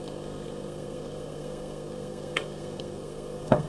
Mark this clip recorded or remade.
remade